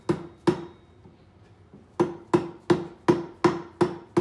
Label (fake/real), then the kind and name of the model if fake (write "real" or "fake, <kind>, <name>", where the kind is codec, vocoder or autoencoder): real